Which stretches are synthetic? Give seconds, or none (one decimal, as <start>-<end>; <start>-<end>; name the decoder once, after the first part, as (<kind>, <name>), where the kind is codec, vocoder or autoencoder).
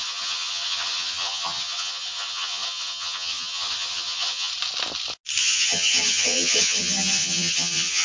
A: 0.0-4.5 (vocoder, HiFi-GAN); 5.4-8.0